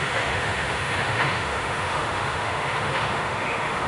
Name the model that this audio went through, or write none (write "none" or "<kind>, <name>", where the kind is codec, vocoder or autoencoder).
autoencoder, DAC-VAE